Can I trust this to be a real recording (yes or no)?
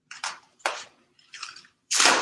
no